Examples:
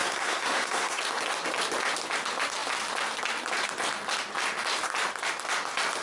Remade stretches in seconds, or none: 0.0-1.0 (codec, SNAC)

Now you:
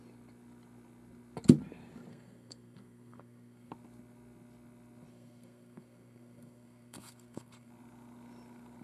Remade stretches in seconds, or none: 2.1-3.7 (codec, SNAC); 5.1-7.7

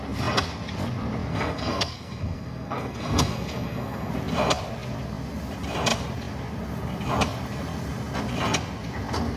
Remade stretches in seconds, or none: 1.3-4.1 (codec, SNAC)

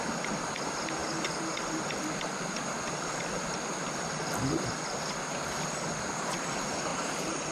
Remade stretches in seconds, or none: none

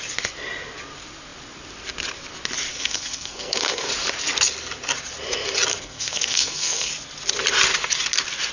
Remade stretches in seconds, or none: 2.7-3.9 (codec, SNAC); 5.7-6.9

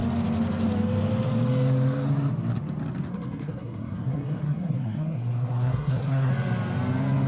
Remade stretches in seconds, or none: 3.1-6.3 (codec, SNAC)

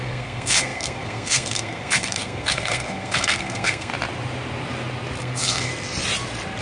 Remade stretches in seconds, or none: 0.0-3.9 (codec, SNAC); 5.2-5.7

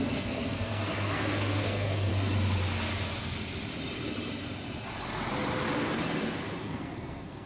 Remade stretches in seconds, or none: 0.0-2.1 (codec, SNAC); 6.6-7.5